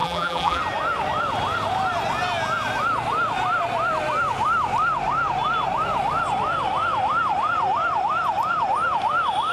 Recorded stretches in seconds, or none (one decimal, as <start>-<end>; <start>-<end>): 0.6-9.5